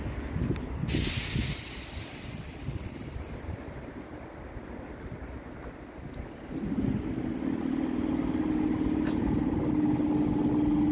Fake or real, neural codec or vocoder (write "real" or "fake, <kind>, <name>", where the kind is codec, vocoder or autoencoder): real